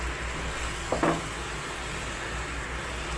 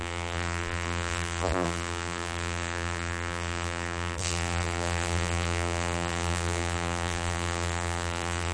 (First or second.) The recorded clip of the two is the first